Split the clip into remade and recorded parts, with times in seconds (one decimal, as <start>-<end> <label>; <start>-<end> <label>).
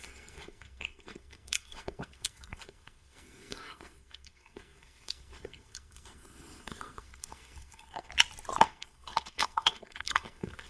0.0-8.1 remade; 8.1-8.6 recorded; 8.6-10.7 remade